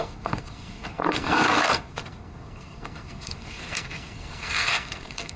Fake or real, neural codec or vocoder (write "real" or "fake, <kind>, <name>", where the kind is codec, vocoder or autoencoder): fake, codec, SNAC